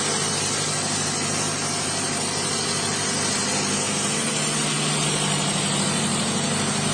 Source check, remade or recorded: recorded